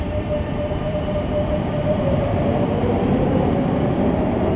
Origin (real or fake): fake